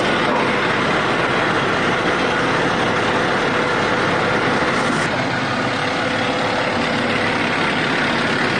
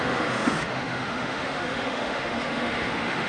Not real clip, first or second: second